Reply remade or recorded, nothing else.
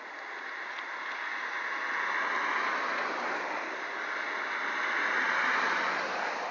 recorded